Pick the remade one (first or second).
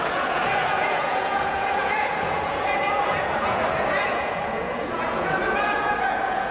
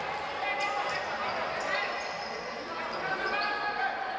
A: first